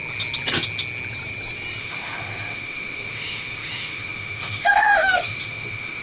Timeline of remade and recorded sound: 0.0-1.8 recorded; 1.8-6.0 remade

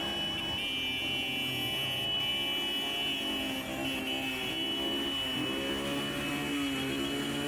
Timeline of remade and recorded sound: 0.0-7.5 recorded